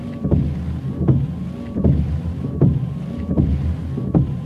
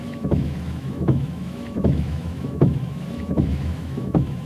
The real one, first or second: first